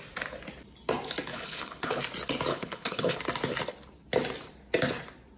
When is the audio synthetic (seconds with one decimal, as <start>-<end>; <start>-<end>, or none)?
1.3-2.0; 2.5-3.2